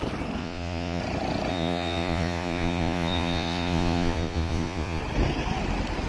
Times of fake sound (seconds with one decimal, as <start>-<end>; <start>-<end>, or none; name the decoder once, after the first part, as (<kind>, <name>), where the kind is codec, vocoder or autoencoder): 0.4-1.0 (vocoder, Vocos); 1.5-5.0